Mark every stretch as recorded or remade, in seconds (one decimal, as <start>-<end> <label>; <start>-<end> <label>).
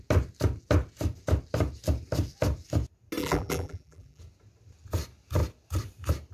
0.0-3.2 recorded; 3.2-4.2 remade; 4.2-6.3 recorded